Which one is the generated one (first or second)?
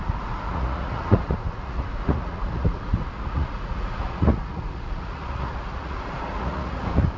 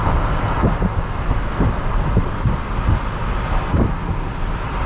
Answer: first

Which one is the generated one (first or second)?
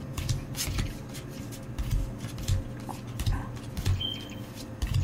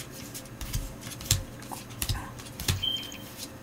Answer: second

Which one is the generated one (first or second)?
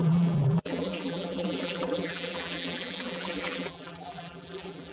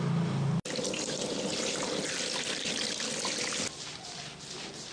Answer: first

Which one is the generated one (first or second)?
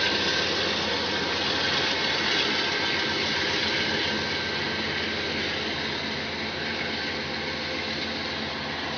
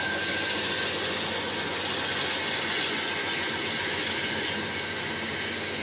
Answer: second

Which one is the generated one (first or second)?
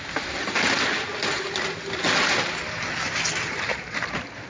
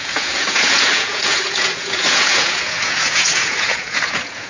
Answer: second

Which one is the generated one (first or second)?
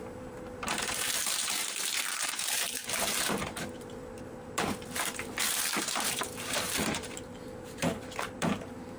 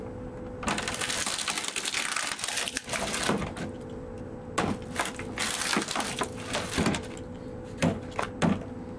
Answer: first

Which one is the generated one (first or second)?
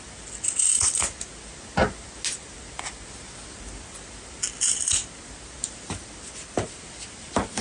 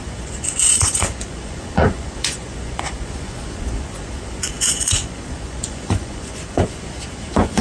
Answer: second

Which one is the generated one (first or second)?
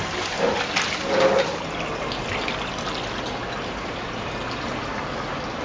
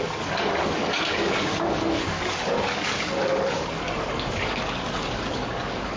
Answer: second